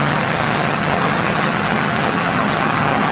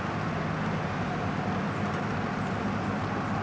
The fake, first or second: first